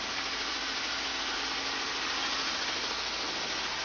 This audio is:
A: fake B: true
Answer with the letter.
B